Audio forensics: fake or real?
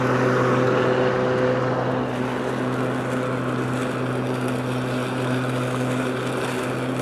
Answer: real